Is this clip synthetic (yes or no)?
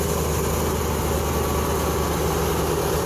no